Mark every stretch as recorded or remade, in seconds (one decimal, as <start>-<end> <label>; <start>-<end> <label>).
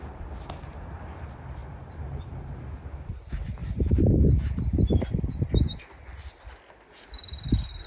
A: 0.0-7.9 recorded